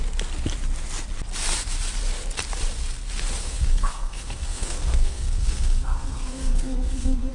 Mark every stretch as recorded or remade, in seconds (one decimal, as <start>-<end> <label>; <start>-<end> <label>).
0.0-3.4 recorded; 3.4-7.3 remade